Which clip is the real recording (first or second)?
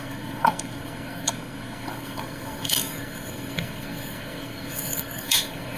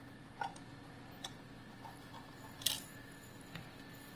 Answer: second